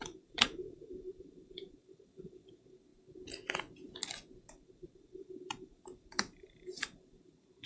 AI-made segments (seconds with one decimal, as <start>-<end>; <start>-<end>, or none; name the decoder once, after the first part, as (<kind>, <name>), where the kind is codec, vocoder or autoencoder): 0.0-2.9 (vocoder, BigVGAN v2); 4.5-7.7